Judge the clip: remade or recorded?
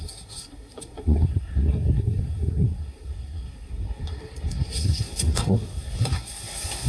remade